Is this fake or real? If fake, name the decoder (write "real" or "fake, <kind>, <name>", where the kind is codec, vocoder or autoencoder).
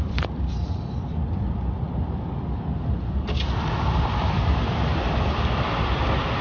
fake, vocoder, BigVGAN v2